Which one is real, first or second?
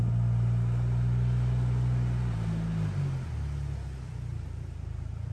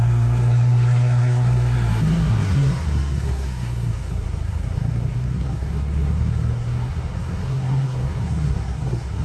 first